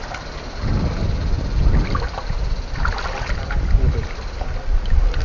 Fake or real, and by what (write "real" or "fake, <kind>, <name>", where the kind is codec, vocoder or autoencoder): real